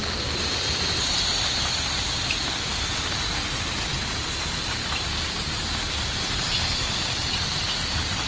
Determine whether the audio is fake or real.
real